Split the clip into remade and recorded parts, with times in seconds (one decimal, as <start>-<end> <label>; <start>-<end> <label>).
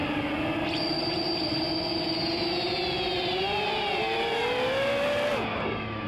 0.0-6.1 recorded